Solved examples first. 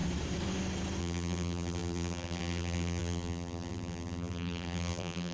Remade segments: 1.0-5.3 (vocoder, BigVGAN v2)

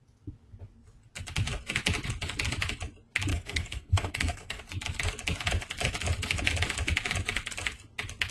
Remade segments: 3.3-4.6 (codec, SNAC)